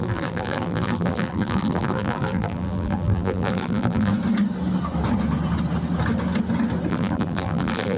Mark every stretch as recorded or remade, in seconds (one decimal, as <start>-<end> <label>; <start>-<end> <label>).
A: 0.0-4.1 remade; 4.1-6.9 recorded; 6.9-8.0 remade